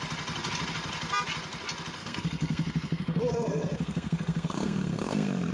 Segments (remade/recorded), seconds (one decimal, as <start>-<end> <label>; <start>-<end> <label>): 0.0-2.0 recorded; 2.0-5.5 remade